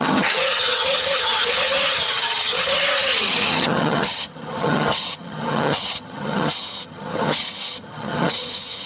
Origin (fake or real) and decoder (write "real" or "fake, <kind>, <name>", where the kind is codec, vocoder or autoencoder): fake, vocoder, HiFi-GAN